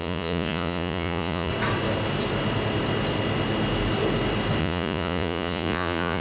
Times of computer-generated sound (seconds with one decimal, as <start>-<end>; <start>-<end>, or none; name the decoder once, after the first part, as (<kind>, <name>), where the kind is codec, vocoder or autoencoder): 0.0-1.5 (vocoder, Vocos); 4.6-6.2